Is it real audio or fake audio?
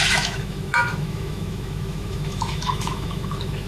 fake